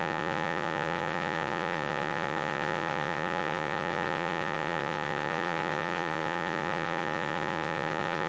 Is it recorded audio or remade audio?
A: remade